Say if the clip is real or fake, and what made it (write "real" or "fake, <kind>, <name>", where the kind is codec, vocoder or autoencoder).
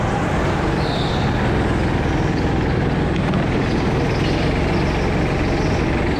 real